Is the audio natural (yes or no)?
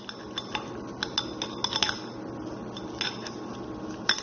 yes